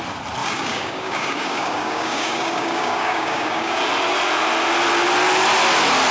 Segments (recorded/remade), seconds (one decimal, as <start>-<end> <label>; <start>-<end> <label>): 0.0-0.4 recorded; 0.4-3.8 remade; 3.8-6.1 recorded